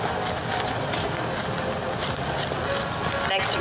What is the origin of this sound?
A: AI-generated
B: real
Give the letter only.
B